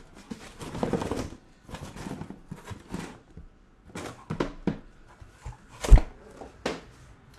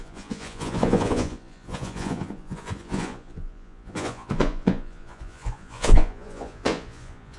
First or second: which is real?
first